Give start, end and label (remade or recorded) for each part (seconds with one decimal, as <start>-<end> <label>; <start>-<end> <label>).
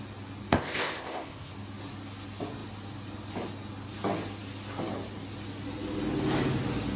0.0-0.5 recorded; 0.5-1.5 remade; 1.5-7.0 recorded